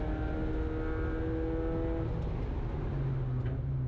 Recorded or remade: recorded